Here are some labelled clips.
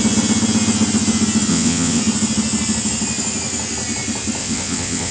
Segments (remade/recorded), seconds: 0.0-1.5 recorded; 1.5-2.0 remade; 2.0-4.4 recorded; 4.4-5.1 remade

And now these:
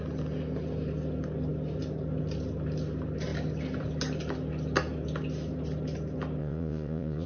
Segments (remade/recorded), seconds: 0.0-6.4 recorded; 6.4-7.3 remade

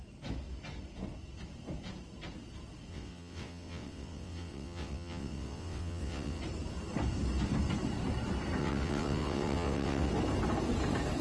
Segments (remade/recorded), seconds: 0.0-2.9 recorded; 2.9-6.4 remade; 6.4-8.6 recorded; 8.6-10.1 remade; 10.1-11.2 recorded

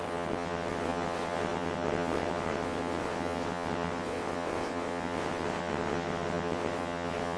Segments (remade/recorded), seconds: 0.0-7.4 remade

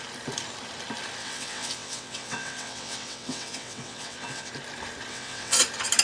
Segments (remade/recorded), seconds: 0.0-1.2 recorded; 1.2-4.5 remade; 4.5-5.1 recorded; 5.1-5.6 remade; 5.6-6.0 recorded